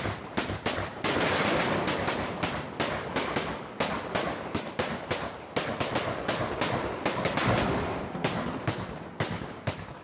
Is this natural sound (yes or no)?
yes